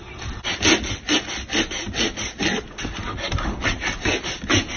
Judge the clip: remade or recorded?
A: recorded